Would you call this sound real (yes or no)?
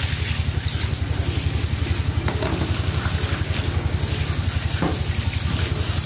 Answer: yes